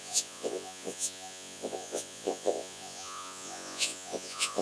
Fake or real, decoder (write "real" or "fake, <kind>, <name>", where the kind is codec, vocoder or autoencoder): fake, vocoder, Vocos